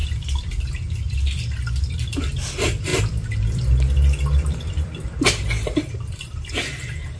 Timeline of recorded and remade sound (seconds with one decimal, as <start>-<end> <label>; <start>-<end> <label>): 0.0-2.9 recorded; 2.9-6.5 remade; 6.5-7.2 recorded